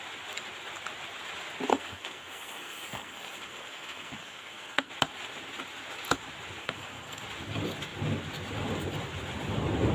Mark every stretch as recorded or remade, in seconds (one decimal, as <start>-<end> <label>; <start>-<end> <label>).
0.0-1.7 recorded; 1.7-4.9 remade; 4.9-6.6 recorded; 6.6-7.2 remade; 7.2-9.9 recorded